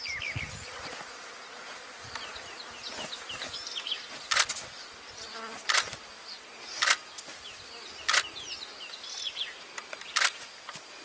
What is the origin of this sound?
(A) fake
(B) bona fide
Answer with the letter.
B